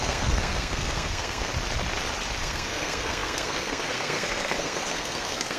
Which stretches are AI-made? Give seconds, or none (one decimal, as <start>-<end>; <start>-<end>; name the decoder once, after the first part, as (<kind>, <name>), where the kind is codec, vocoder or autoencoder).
0.0-1.5 (codec, SNAC); 2.4-5.6

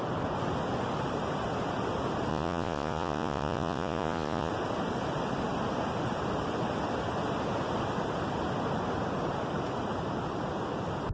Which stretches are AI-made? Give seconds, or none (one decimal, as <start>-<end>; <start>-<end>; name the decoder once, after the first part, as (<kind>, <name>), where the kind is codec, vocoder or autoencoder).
2.3-4.5 (vocoder, Vocos)

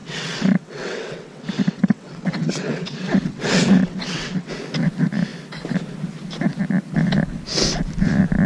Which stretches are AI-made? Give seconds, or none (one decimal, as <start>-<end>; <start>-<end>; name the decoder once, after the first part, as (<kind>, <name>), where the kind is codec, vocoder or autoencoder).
0.0-4.5 (vocoder, WaveNeXt)

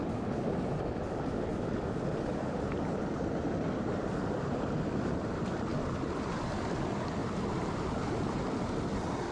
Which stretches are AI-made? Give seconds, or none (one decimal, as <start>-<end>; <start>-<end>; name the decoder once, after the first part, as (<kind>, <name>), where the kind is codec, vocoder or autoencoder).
1.5-3.0 (vocoder, BigVGAN v2); 5.7-6.5

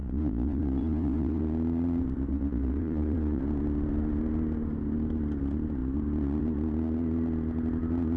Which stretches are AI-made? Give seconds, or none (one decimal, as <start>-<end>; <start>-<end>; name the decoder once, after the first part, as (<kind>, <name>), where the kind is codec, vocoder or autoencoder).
0.0-1.4 (vocoder, Vocos); 2.3-3.4

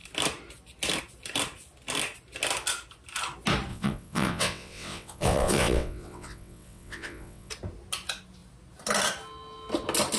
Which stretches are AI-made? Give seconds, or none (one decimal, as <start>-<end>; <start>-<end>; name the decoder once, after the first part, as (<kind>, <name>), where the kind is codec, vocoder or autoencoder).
3.7-7.5 (vocoder, WaveNeXt)